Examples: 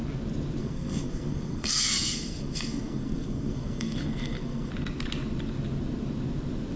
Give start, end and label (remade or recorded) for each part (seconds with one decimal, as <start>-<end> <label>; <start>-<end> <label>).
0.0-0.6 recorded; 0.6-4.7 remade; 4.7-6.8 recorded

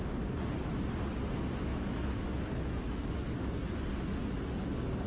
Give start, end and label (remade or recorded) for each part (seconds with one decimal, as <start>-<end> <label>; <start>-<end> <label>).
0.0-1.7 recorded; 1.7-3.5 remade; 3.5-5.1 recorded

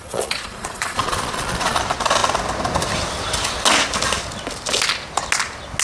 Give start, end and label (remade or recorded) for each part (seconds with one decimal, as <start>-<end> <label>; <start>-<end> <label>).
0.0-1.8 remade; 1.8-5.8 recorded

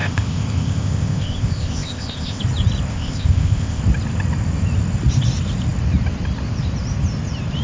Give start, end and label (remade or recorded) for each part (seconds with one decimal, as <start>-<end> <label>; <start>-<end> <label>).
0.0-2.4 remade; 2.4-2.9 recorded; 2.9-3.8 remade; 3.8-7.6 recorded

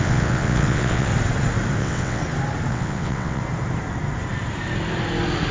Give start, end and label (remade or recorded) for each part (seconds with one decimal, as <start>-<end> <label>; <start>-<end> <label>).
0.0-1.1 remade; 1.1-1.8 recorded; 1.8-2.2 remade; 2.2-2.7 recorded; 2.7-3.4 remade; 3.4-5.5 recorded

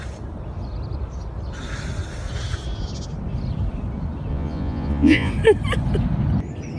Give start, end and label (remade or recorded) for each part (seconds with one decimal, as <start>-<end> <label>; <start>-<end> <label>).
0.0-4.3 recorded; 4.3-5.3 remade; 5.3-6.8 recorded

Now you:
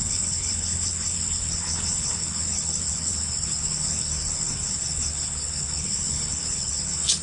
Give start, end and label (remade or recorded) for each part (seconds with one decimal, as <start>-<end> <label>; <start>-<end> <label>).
0.0-7.2 remade